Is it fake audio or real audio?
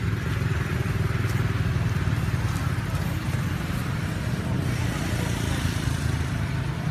real